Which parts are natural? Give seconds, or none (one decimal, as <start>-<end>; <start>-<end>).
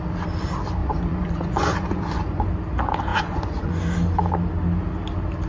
0.0-0.8; 2.4-3.1; 3.8-5.5